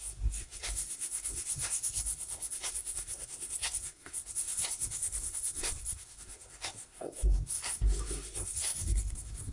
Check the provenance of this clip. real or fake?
fake